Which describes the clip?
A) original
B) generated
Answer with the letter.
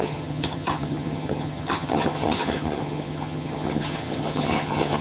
B